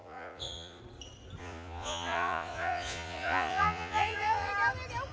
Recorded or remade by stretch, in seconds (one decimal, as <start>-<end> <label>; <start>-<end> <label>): 0.0-0.8 remade; 0.8-1.4 recorded; 1.4-4.5 remade; 4.5-5.1 recorded